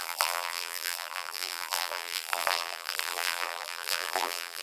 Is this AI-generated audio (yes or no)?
yes